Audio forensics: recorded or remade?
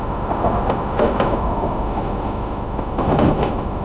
remade